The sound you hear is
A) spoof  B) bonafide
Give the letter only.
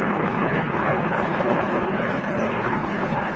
A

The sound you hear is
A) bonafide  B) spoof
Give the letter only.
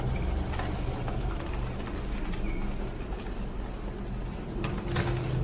A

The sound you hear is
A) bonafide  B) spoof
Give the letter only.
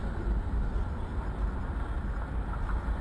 A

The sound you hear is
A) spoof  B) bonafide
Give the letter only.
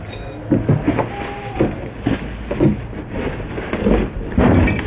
B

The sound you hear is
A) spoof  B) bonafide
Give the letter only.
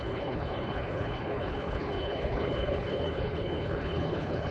A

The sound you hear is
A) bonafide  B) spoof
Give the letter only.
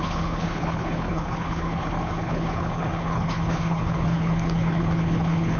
B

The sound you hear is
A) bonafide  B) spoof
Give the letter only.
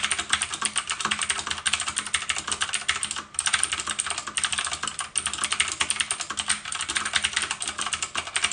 A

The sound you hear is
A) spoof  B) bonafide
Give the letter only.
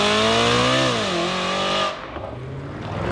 B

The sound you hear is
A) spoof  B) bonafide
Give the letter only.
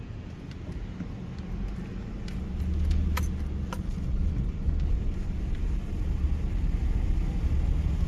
B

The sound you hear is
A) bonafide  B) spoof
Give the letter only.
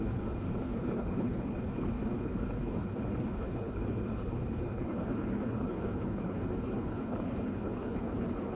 B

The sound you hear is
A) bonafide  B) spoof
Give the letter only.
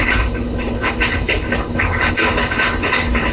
B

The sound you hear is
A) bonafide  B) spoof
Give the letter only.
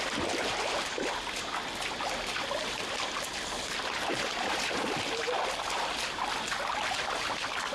A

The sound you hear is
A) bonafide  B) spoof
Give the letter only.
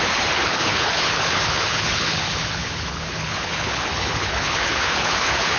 B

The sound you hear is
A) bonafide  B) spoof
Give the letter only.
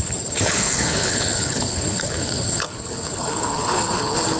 B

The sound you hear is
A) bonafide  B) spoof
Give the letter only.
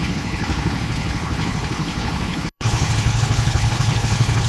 B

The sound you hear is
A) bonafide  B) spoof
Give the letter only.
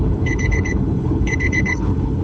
B